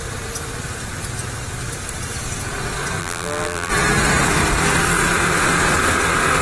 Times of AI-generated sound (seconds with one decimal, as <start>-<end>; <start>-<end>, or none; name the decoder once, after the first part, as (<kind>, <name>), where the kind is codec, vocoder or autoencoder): 3.0-3.7 (vocoder, BigVGAN v2)